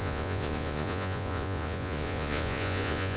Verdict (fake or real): fake